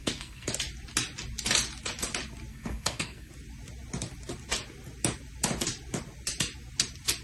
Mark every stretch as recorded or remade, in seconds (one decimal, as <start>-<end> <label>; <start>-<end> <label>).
0.0-0.5 remade; 0.5-2.5 recorded; 2.5-3.3 remade; 3.3-7.2 recorded